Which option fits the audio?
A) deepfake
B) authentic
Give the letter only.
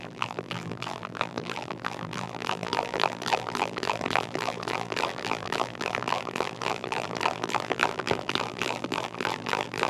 A